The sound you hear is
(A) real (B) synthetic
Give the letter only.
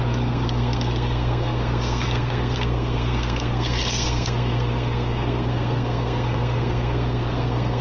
B